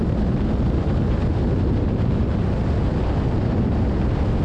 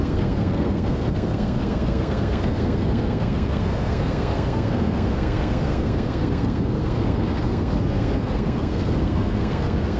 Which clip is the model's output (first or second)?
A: second